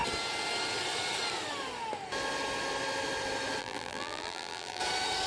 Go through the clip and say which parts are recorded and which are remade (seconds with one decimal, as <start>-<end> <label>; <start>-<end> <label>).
0.0-3.6 recorded; 3.6-4.8 remade; 4.8-5.3 recorded